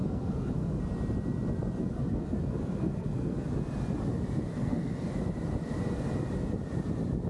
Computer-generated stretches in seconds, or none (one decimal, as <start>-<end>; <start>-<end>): 0.0-0.8; 1.8-3.5; 4.5-5.1